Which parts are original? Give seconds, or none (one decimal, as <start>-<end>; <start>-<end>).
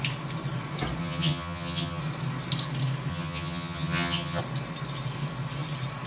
0.0-1.0; 2.0-3.1; 4.4-6.1